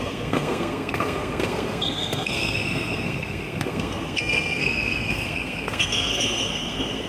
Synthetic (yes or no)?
yes